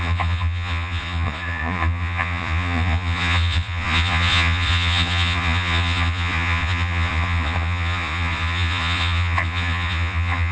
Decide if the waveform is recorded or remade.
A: remade